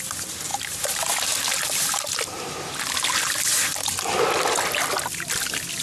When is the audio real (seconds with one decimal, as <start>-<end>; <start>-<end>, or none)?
0.0-5.8